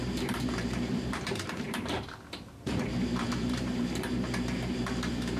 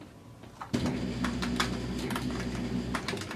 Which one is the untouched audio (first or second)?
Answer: second